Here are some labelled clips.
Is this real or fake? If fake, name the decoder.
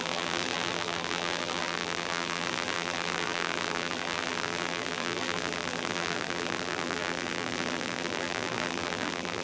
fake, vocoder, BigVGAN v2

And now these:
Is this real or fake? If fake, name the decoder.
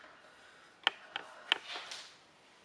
real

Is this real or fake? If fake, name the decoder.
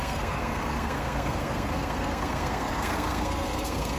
fake, codec, SNAC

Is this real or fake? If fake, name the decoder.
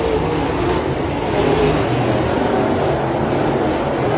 real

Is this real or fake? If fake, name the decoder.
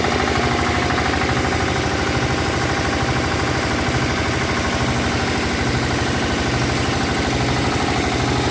real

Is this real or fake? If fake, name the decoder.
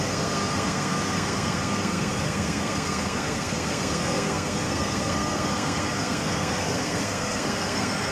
fake, codec, SNAC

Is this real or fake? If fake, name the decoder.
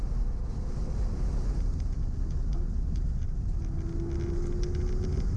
real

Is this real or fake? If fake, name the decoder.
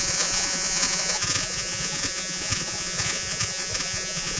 fake, vocoder, Vocos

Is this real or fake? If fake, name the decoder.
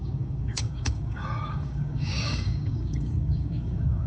fake, codec, DAC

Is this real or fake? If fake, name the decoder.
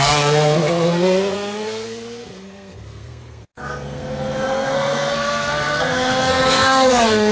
fake, codec, SNAC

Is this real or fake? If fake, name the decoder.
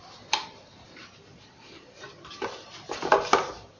fake, vocoder, BigVGAN v2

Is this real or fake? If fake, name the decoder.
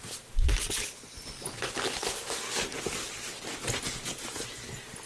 real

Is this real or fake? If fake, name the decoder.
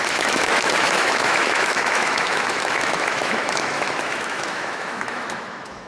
fake, autoencoder, DAC-VAE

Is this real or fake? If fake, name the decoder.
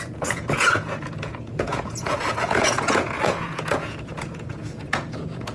fake, vocoder, Vocos